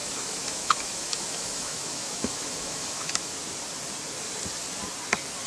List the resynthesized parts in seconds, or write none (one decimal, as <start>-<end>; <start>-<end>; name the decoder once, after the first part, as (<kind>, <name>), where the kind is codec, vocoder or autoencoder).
0.0-3.3 (autoencoder, DAC-VAE)